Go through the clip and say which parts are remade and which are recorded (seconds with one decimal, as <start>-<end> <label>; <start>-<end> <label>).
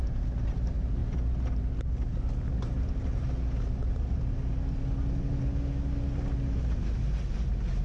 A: 0.0-7.8 recorded